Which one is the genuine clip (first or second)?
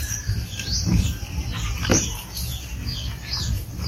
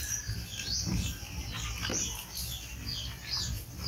second